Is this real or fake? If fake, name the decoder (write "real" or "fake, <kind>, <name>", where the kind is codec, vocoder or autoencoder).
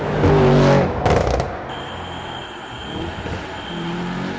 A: real